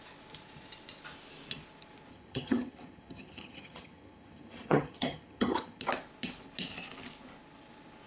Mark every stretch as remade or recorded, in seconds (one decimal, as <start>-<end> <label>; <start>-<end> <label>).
0.0-2.1 recorded; 2.1-5.8 remade; 5.8-8.1 recorded